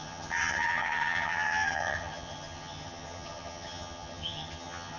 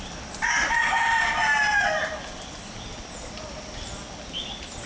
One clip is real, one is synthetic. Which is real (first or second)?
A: second